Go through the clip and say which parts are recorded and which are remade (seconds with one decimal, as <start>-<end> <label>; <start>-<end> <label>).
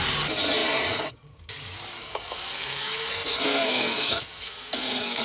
0.0-2.0 recorded; 2.0-5.2 remade